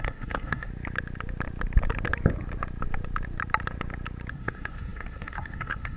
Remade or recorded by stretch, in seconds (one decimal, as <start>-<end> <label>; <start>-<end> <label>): 0.0-0.7 remade; 0.7-4.3 recorded; 4.3-6.0 remade